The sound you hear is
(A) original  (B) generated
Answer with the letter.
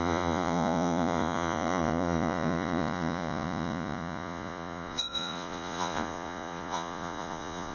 B